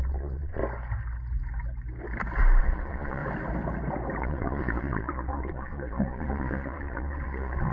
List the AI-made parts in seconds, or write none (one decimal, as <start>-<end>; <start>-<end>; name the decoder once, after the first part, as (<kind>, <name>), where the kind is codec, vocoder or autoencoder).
0.0-0.6 (vocoder, Vocos); 2.6-3.2; 4.2-7.7